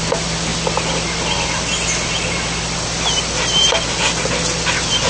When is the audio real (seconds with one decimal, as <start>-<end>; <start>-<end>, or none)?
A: 0.0-5.1